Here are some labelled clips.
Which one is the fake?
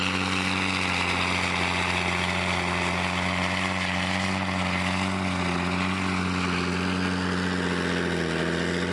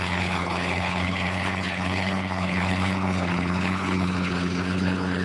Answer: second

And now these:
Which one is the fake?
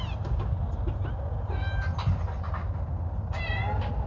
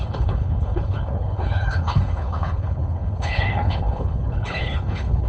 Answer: second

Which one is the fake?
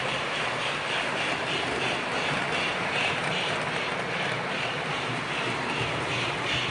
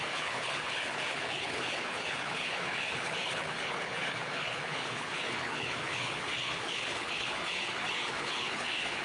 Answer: second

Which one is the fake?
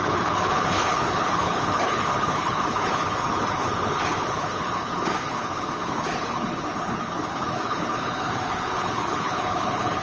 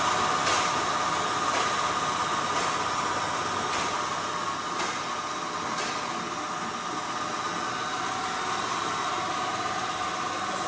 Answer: first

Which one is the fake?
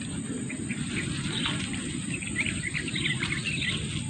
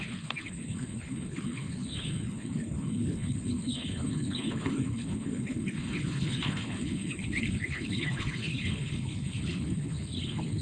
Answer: second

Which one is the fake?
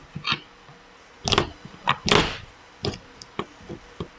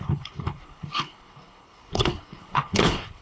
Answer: second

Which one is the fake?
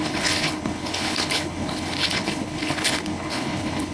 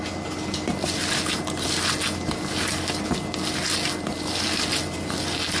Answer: first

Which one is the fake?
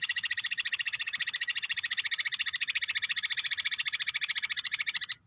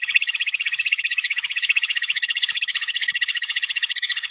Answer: second